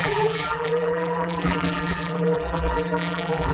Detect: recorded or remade remade